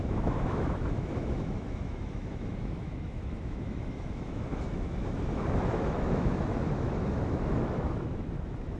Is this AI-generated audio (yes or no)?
yes